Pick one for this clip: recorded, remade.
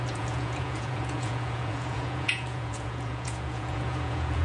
remade